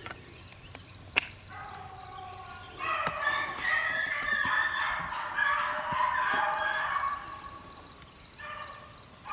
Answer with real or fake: real